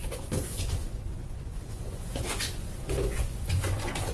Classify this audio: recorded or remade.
remade